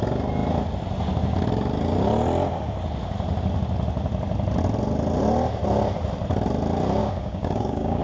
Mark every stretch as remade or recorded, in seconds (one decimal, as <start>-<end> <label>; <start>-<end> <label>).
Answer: 0.0-7.0 recorded; 7.0-8.0 remade